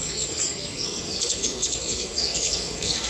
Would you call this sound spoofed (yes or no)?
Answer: yes